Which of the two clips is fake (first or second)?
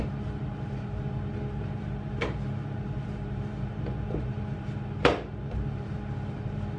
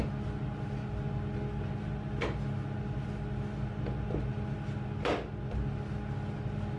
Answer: first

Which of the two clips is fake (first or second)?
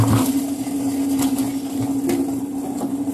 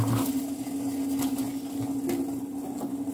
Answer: first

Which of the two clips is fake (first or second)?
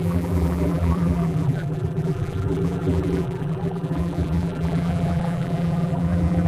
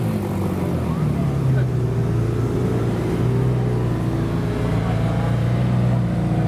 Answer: first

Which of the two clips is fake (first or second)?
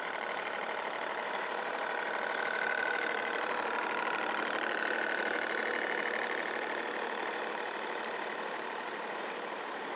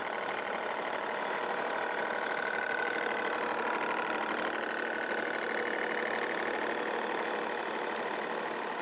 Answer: first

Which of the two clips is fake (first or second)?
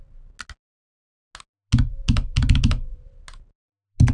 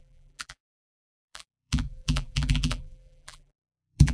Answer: second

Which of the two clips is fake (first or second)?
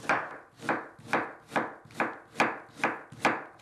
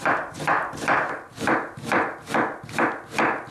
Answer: second